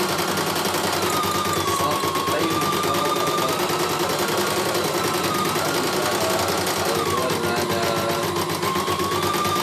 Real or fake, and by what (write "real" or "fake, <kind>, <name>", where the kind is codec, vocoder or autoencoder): real